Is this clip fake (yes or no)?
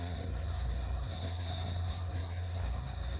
yes